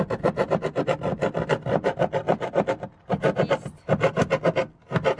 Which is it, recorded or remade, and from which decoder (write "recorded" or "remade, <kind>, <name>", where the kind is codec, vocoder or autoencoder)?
recorded